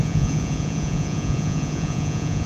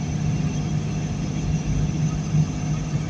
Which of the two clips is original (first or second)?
second